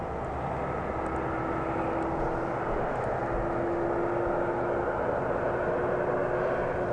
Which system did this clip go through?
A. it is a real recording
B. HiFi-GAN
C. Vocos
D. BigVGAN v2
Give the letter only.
A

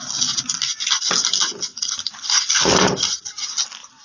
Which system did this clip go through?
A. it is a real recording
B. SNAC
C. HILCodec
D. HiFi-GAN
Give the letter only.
A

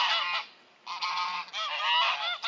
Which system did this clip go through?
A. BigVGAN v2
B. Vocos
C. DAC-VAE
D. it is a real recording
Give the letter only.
D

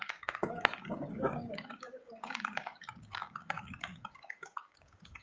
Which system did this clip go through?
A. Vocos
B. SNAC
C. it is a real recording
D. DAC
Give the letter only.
D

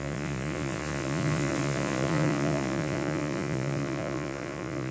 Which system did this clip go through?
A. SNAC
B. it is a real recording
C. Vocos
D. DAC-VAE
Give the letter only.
C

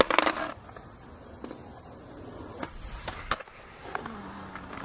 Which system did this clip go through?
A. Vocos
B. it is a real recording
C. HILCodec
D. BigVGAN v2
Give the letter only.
B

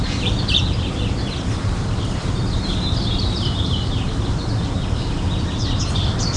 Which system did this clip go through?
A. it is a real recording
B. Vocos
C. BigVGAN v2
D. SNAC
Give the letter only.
A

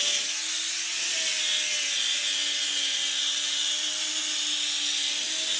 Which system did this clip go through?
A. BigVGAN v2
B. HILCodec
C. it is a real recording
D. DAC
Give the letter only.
C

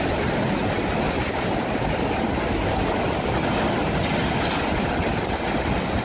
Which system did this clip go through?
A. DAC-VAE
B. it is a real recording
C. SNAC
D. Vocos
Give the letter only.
B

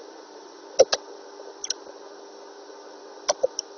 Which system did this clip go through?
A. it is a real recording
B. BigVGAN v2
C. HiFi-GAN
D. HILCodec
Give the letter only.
A